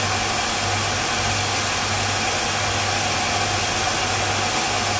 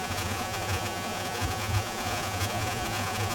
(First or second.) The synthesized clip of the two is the second